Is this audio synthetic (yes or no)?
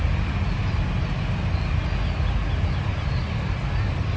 no